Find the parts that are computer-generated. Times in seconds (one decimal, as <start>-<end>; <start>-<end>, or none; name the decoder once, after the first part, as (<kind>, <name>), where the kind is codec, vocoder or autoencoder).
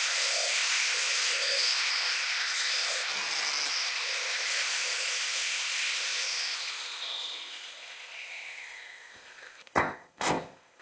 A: 0.0-3.1 (codec, ZipCodec); 3.7-10.8